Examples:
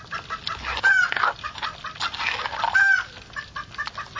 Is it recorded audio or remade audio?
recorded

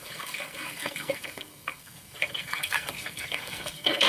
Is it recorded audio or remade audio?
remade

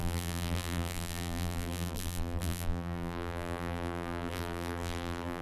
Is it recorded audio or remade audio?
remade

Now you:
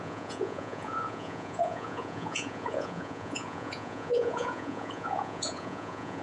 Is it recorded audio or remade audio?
remade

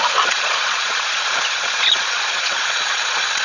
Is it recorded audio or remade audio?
remade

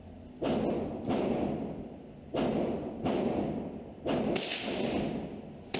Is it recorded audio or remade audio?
recorded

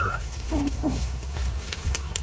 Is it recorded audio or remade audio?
remade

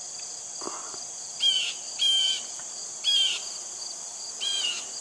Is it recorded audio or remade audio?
recorded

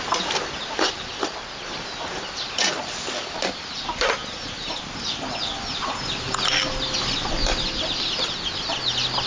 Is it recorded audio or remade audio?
recorded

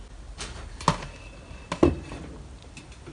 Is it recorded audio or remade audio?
recorded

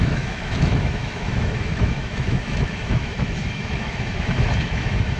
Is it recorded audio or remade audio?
remade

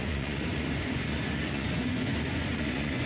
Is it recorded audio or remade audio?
remade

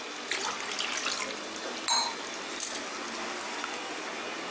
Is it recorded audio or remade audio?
recorded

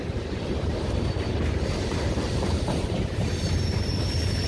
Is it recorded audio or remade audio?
remade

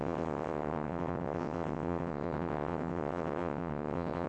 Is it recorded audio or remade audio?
remade